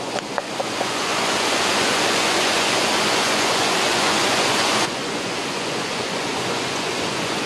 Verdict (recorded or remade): remade